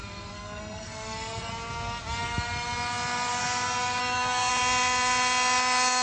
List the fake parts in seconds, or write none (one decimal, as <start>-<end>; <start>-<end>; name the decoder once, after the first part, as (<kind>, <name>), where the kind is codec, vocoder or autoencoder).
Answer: 0.0-1.5 (codec, SNAC); 4.0-4.5

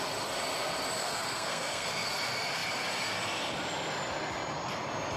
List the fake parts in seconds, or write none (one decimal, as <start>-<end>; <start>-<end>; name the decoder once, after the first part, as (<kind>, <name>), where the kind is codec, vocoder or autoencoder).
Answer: 1.0-2.1 (codec, SNAC)